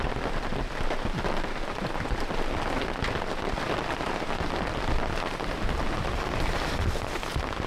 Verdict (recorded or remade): recorded